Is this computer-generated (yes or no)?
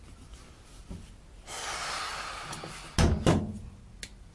no